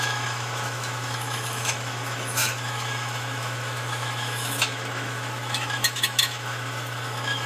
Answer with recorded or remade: remade